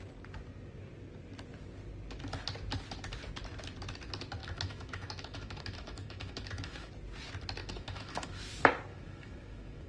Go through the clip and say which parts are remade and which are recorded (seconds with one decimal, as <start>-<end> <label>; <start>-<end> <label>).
0.0-4.4 recorded; 4.4-6.9 remade; 6.9-7.6 recorded; 7.6-8.4 remade; 8.4-8.9 recorded; 8.9-9.9 remade